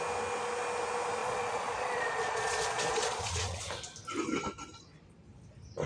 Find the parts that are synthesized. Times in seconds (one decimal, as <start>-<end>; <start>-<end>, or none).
1.2-3.7